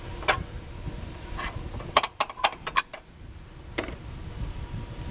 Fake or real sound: real